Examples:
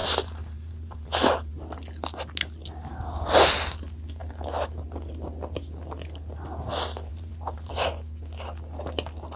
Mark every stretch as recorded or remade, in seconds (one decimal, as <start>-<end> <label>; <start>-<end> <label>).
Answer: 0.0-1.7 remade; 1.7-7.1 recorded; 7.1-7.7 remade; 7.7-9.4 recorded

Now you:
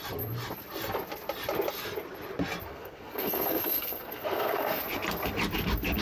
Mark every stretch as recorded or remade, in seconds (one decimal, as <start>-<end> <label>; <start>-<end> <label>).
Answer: 0.0-2.7 recorded; 2.7-4.8 remade; 4.8-6.0 recorded

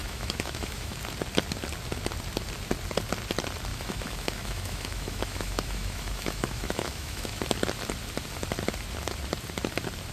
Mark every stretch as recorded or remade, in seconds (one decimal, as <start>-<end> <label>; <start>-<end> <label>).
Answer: 0.0-1.0 remade; 1.0-3.7 recorded; 3.7-7.4 remade; 7.4-10.1 recorded

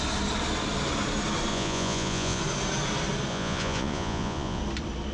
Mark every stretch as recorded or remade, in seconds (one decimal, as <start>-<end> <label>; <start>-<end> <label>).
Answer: 0.0-1.5 recorded; 1.5-2.4 remade; 2.4-3.3 recorded; 3.3-4.6 remade; 4.6-5.1 recorded

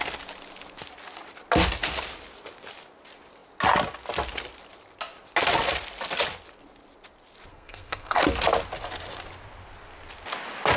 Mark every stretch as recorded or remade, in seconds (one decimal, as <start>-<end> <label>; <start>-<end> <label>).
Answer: 0.0-7.5 recorded; 7.5-8.2 remade; 8.2-10.8 recorded

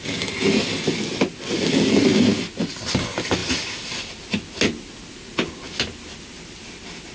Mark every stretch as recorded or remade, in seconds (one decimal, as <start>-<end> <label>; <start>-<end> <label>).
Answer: 0.0-7.1 recorded

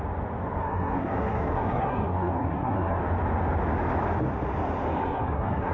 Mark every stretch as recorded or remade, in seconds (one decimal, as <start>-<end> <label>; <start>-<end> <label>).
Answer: 0.0-0.6 recorded; 0.6-3.0 remade; 3.0-5.0 recorded; 5.0-5.7 remade

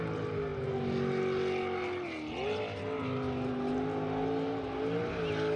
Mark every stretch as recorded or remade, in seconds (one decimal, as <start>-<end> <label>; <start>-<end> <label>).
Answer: 0.0-5.6 recorded